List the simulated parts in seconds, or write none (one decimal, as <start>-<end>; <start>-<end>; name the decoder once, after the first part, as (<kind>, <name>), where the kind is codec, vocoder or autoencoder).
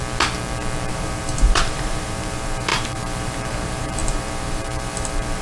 0.9-5.4 (vocoder, BigVGAN v2)